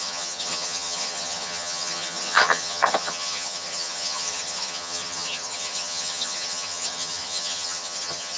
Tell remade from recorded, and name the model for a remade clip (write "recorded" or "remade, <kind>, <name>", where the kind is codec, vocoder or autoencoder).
remade, vocoder, HiFi-GAN